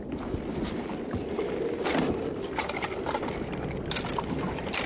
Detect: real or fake fake